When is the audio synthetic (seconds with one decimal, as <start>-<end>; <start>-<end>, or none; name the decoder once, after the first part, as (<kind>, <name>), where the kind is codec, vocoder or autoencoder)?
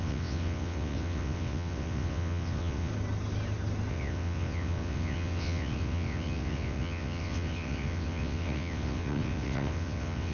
0.0-2.9 (vocoder, WaveNeXt); 3.9-10.3